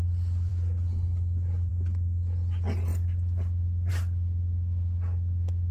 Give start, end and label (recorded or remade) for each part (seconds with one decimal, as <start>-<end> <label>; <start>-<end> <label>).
0.0-5.7 recorded